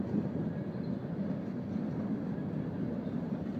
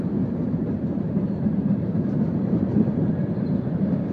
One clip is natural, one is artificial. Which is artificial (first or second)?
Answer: second